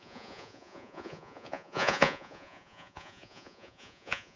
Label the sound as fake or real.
fake